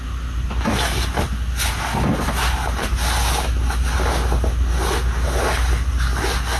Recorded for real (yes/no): yes